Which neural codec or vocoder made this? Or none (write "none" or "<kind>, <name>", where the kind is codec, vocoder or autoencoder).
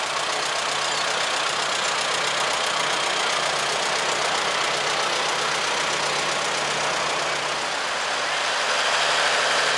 none